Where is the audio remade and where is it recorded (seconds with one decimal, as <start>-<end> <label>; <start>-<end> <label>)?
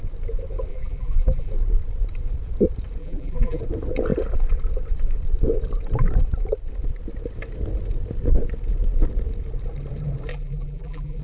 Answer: 0.0-0.7 recorded; 0.7-1.5 remade; 1.5-3.0 recorded; 3.0-3.6 remade; 3.6-10.3 recorded; 10.3-11.2 remade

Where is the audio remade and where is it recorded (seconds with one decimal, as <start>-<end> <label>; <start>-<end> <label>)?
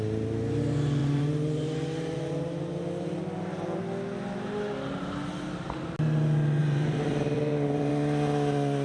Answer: 0.0-1.0 recorded; 1.0-3.8 remade; 3.8-6.6 recorded; 6.6-7.9 remade; 7.9-8.8 recorded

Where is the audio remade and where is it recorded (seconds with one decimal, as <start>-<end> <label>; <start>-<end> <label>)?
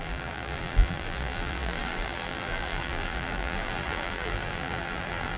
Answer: 0.0-5.4 remade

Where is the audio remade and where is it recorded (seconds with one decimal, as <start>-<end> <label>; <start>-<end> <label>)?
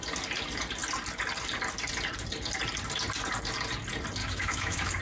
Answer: 0.0-4.2 recorded; 4.2-5.0 remade